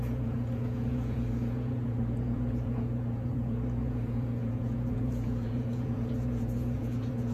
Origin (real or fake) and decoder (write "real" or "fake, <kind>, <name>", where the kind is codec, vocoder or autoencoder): fake, vocoder, Vocos